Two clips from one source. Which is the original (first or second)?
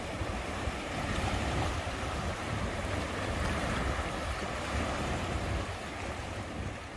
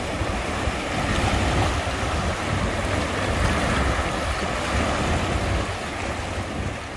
second